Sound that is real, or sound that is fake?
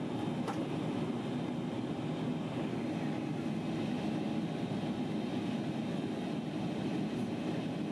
real